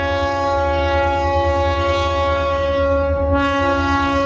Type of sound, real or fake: fake